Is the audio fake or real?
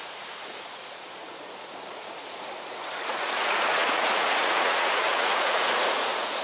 fake